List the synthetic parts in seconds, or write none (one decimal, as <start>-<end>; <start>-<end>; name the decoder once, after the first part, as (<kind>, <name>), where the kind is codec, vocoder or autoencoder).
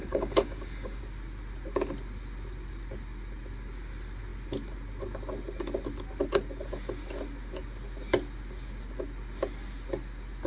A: 0.0-1.0 (codec, DAC)